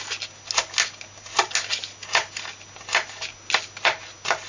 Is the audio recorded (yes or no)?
yes